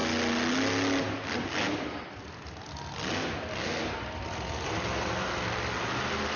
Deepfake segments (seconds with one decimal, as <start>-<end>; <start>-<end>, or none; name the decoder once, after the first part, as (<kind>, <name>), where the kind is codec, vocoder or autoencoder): none